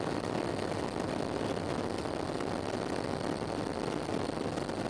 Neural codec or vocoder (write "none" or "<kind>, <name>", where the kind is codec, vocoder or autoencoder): none